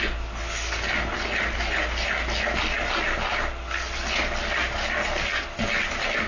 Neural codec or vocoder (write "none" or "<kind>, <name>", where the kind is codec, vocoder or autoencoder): none